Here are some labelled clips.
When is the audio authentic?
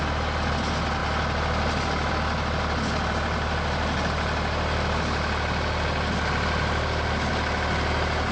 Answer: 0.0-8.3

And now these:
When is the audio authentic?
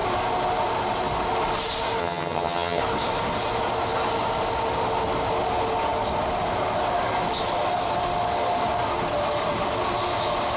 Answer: 0.0-2.0; 2.8-10.6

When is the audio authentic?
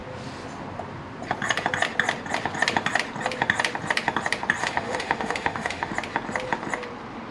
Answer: 0.0-4.6; 5.9-7.3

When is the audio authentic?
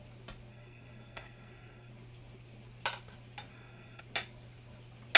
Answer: 0.0-0.5; 1.9-3.5; 4.0-5.2